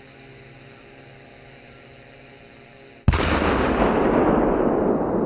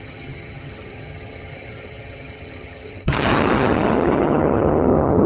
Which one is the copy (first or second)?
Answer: second